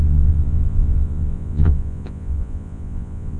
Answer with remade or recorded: remade